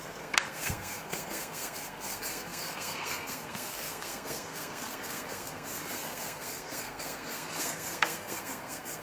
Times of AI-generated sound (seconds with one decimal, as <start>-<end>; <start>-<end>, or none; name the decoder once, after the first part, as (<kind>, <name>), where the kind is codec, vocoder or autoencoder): 0.0-9.0 (codec, SNAC)